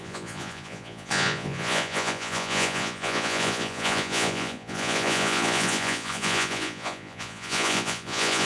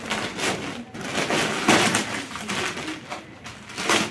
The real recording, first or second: second